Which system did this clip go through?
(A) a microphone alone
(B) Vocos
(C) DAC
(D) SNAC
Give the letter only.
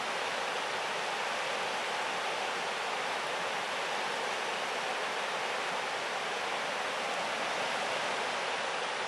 A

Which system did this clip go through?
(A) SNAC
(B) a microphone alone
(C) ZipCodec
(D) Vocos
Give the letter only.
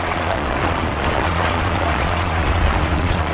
D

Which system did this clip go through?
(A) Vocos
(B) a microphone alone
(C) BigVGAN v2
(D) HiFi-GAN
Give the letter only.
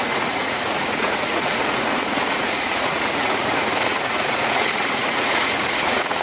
A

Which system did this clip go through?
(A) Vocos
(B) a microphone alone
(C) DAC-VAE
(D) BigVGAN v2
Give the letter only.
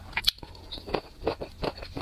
B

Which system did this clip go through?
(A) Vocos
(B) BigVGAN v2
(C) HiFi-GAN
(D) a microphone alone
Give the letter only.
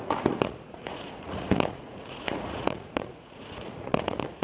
A